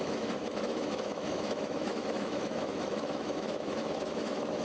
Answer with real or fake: fake